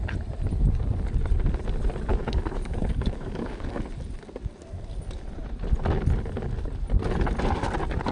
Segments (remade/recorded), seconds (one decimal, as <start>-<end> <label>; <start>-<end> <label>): 0.0-2.1 recorded; 2.1-3.8 remade; 3.8-8.1 recorded